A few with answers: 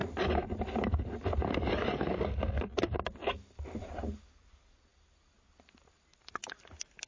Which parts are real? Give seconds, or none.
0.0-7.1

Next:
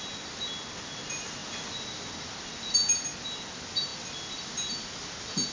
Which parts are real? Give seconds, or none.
0.0-5.5